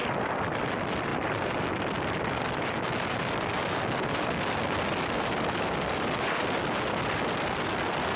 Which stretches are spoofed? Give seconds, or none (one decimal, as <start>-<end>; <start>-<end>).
0.0-1.1; 2.2-3.6; 5.5-8.2